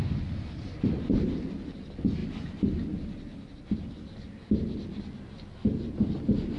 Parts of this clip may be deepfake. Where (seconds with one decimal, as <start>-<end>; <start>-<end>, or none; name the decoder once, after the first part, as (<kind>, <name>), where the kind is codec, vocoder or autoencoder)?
none

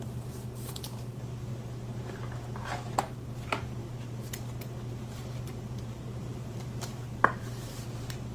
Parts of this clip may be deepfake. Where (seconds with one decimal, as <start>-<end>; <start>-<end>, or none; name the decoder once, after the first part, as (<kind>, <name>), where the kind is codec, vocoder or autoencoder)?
0.0-1.5 (vocoder, BigVGAN v2); 3.0-3.8; 5.0-8.3

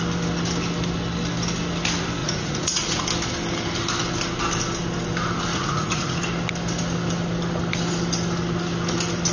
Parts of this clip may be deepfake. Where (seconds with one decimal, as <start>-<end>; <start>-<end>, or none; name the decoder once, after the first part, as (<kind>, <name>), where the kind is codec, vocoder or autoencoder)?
2.2-3.0 (vocoder, Vocos); 5.5-6.2